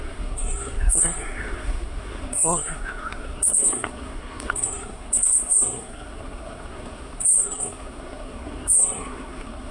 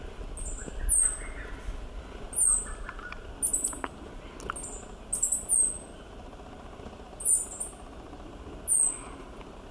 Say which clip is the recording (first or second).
second